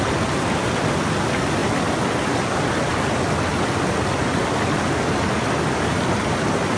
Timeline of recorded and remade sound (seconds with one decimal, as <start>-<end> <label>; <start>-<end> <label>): 0.0-6.8 recorded